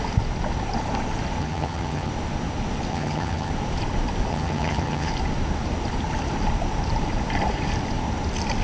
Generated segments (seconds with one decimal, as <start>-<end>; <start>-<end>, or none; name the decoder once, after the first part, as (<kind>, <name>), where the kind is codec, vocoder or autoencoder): 1.4-2.1 (vocoder, HiFi-GAN); 2.9-3.5; 4.3-5.1